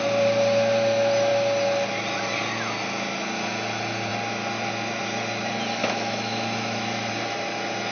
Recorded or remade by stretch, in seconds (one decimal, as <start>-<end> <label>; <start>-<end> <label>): 0.0-5.8 recorded; 5.8-7.1 remade; 7.1-7.9 recorded